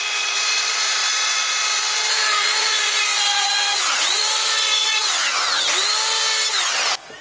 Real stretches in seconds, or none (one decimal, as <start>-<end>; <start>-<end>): 5.3-7.2